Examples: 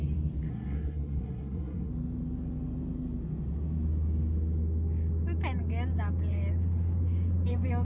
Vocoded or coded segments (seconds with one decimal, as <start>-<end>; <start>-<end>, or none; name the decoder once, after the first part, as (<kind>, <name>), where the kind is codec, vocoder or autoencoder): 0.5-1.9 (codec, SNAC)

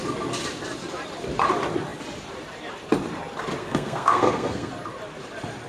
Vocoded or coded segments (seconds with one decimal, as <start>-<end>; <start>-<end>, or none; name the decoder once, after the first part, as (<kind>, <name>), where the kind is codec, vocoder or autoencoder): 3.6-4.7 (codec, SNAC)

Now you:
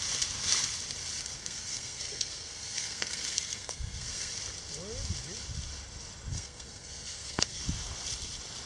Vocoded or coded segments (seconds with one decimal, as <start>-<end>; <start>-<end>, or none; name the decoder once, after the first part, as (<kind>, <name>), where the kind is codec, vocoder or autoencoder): 1.4-4.3 (codec, SNAC); 6.3-7.6

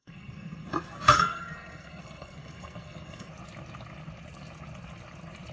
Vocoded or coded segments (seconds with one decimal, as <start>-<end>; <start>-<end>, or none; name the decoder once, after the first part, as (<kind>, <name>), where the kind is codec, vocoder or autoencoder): 0.0-3.3 (codec, SNAC)

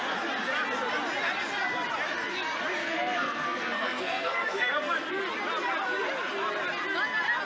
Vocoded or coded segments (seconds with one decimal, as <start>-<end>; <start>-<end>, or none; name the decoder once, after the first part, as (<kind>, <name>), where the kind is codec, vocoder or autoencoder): 2.8-5.2 (codec, SNAC)